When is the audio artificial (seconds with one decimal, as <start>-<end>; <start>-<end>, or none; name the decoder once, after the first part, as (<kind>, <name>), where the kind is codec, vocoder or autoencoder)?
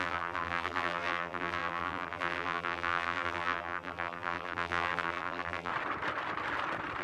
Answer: 0.0-5.7 (vocoder, BigVGAN v2)